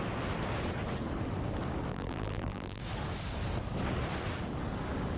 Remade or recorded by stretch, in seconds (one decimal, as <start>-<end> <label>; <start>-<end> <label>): 0.0-1.9 recorded; 1.9-2.8 remade; 2.8-5.2 recorded